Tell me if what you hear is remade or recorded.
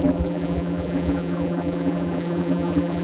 remade